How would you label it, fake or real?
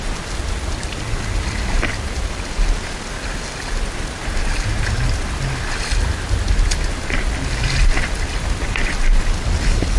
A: real